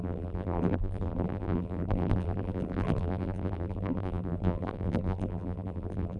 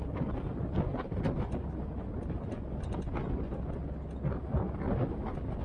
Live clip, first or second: second